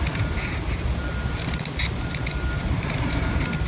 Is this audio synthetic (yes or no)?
no